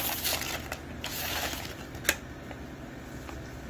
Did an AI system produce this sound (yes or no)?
no